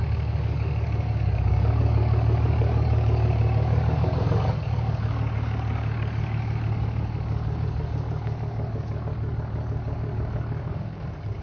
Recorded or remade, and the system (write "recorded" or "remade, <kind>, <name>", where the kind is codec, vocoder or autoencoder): remade, codec, DAC